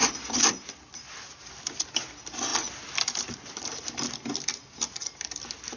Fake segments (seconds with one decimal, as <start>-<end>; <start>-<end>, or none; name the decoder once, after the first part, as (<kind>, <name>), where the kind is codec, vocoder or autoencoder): 0.0-1.5 (vocoder, BigVGAN v2)